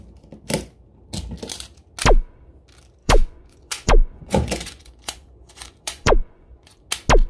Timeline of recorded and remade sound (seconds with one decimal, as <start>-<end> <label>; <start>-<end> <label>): 0.0-3.0 recorded; 3.0-6.8 remade; 6.8-7.3 recorded